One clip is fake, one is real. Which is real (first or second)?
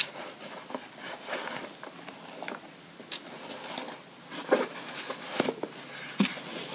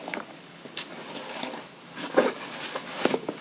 first